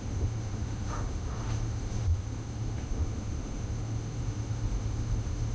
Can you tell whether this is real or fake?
fake